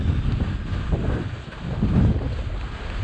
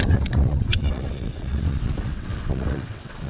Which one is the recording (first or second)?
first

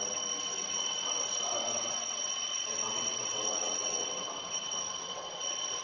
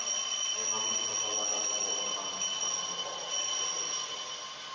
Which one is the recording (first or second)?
second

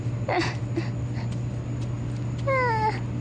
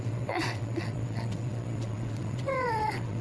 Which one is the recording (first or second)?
first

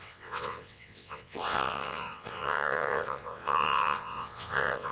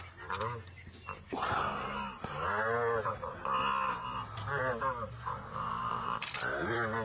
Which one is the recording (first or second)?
second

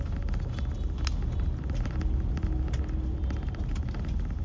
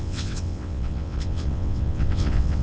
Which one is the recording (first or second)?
first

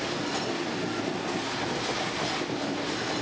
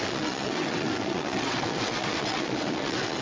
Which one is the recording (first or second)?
first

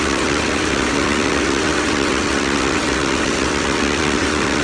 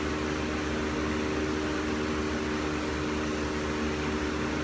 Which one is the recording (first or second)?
second